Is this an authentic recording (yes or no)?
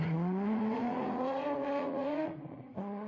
no